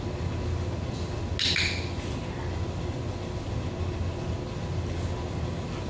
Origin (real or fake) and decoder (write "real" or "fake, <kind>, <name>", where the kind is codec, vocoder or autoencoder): real